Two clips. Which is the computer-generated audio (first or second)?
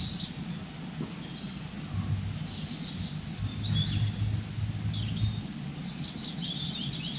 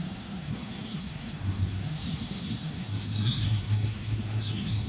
second